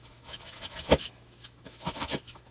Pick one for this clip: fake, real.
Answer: fake